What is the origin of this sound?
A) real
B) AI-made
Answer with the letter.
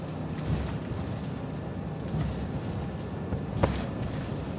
A